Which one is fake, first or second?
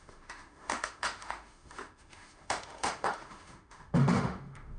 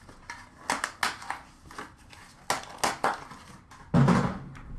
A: first